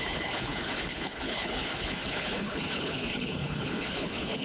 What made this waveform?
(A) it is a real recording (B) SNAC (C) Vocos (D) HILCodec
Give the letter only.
D